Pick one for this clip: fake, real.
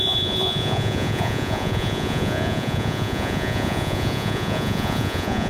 fake